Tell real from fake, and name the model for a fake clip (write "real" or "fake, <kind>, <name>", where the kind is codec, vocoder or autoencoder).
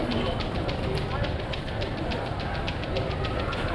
real